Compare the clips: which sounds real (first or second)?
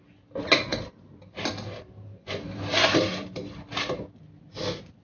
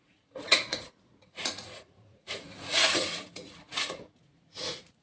first